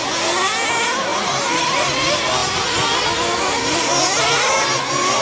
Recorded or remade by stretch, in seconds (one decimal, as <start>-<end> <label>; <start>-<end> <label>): 0.0-5.2 recorded